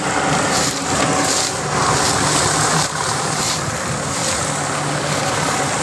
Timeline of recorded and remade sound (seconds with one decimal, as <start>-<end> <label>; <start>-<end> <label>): 0.0-2.7 recorded; 2.7-3.4 remade; 3.4-5.8 recorded